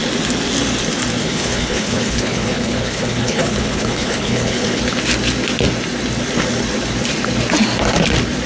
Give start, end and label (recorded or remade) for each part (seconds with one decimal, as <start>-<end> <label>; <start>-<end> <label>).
0.0-1.2 recorded; 1.2-4.8 remade; 4.8-8.5 recorded